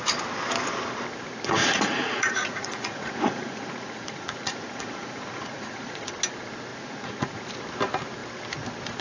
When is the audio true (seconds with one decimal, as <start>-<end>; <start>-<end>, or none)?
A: 0.0-1.6; 6.1-6.7; 7.4-9.0